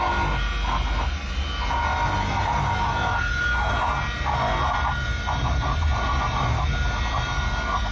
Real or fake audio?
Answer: real